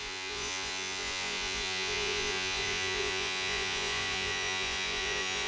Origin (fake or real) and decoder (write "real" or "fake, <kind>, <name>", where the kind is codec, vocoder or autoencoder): fake, vocoder, Vocos